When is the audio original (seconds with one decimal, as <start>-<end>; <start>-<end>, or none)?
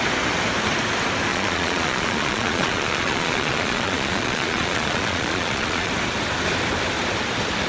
0.0-1.3; 5.9-7.7